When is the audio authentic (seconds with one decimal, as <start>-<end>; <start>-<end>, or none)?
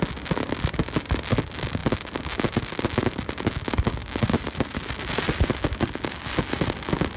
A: 0.0-7.2